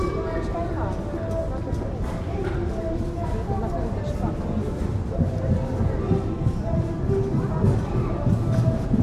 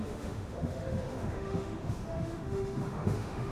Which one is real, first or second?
first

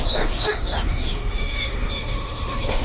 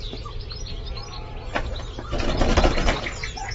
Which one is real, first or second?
second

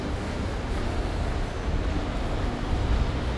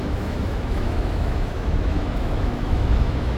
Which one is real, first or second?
first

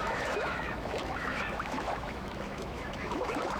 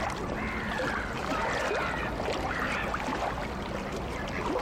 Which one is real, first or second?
second